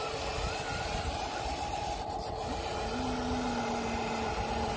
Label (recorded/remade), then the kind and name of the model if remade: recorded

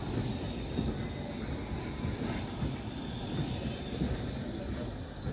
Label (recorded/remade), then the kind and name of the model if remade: recorded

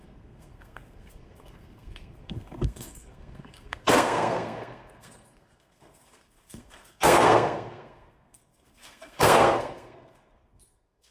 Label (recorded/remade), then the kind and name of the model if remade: remade, codec, SNAC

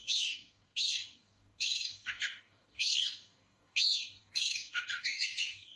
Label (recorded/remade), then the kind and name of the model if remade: remade, codec, DAC